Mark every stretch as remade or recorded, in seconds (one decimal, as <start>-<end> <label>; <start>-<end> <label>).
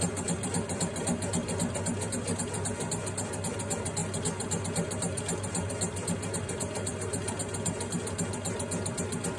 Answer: 0.0-9.4 recorded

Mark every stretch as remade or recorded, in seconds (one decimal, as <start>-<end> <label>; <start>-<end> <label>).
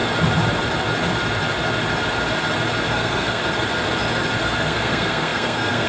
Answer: 0.0-2.9 recorded; 2.9-3.4 remade; 3.4-4.4 recorded; 4.4-5.9 remade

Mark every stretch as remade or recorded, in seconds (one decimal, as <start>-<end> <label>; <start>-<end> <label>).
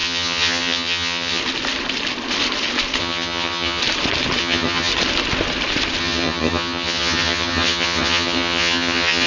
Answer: 0.0-1.4 remade; 1.4-3.0 recorded; 3.0-3.8 remade; 3.8-4.4 recorded; 4.4-4.9 remade; 4.9-6.0 recorded; 6.0-9.3 remade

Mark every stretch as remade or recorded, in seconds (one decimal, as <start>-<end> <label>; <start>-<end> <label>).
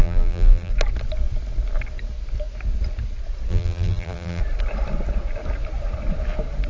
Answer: 0.0-0.7 remade; 0.7-3.5 recorded; 3.5-4.4 remade; 4.4-6.7 recorded